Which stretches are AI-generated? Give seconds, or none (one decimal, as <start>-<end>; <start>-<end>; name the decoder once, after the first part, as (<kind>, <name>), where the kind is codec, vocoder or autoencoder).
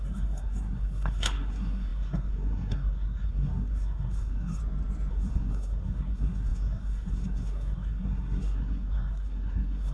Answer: 0.0-4.6 (codec, SNAC); 5.1-9.9